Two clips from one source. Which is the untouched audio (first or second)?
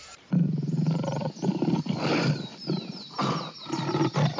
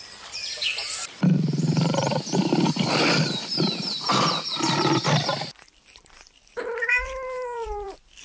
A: first